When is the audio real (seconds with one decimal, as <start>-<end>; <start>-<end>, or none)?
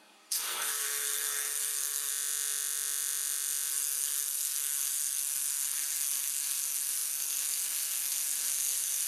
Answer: 2.1-3.7